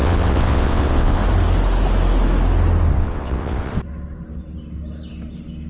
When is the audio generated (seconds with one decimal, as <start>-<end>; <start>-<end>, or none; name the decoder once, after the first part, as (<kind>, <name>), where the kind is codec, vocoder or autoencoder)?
0.0-1.2 (vocoder, WaveNeXt); 2.9-3.7